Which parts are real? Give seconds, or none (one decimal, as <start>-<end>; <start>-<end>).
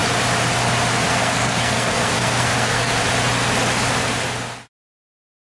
0.0-1.1; 3.0-5.5